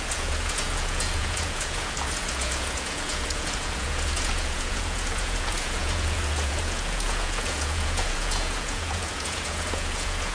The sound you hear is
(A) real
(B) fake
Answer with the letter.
B